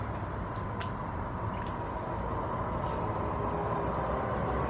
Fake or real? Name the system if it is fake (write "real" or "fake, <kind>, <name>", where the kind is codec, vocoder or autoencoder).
real